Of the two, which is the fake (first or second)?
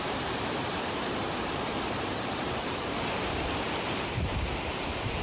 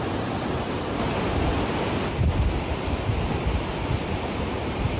first